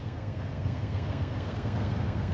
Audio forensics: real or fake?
fake